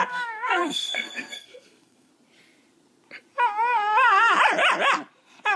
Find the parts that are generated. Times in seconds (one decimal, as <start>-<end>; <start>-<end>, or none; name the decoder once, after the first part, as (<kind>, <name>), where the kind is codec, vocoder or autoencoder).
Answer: 0.0-2.1 (codec, SNAC)